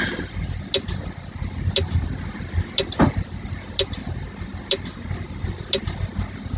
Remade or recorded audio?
recorded